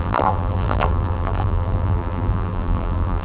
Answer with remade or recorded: remade